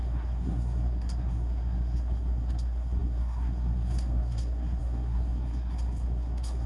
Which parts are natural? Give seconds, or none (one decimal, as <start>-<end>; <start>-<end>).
none